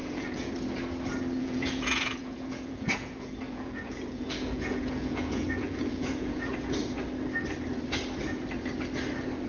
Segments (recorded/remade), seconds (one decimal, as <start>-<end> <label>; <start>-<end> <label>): 0.0-0.5 remade; 0.5-1.4 recorded; 1.4-6.5 remade; 6.5-9.5 recorded